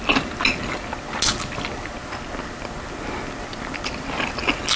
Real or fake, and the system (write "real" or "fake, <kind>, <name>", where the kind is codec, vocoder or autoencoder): real